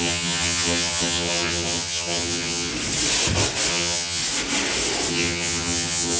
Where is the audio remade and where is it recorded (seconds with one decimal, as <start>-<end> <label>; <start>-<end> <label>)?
0.0-2.7 remade; 2.7-3.7 recorded; 3.7-4.2 remade; 4.2-5.1 recorded; 5.1-6.2 remade